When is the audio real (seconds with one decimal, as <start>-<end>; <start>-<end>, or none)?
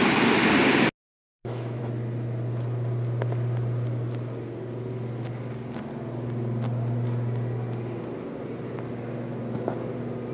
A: 0.0-1.2; 1.8-10.3